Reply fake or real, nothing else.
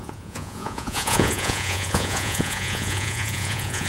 fake